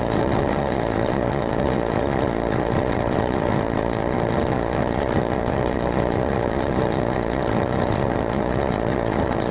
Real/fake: fake